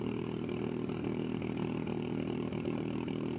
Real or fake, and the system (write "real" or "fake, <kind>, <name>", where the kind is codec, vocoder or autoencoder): fake, vocoder, BigVGAN v2